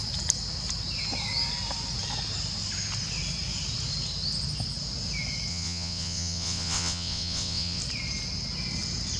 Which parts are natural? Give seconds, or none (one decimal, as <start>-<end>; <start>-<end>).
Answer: 0.0-5.5; 7.8-9.2